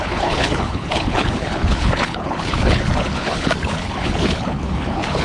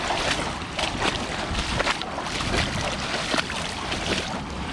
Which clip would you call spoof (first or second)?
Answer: first